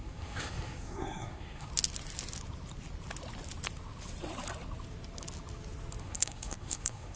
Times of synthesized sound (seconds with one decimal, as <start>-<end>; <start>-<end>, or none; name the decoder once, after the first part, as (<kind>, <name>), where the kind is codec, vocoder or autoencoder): 0.0-1.7 (codec, SNAC); 6.0-7.2